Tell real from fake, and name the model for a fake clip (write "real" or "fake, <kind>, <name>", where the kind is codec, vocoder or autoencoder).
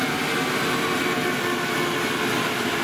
real